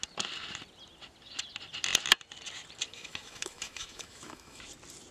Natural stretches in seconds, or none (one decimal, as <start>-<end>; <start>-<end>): 0.0-2.9; 4.6-5.1